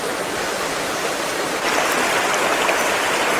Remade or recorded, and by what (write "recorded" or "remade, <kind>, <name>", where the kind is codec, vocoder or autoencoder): recorded